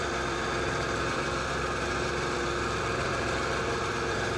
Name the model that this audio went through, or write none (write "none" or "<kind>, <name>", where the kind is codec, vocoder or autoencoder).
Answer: vocoder, BigVGAN v2